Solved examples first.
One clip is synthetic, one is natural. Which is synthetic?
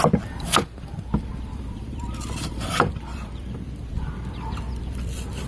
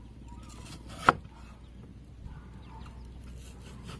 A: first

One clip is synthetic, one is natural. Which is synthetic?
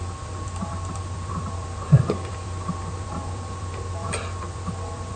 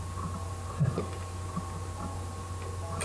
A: first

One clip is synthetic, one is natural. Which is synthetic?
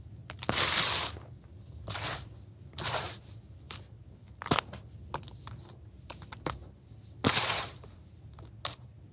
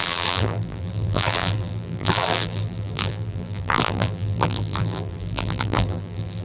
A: second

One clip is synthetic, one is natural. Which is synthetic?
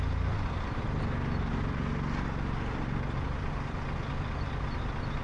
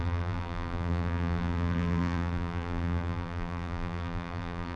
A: second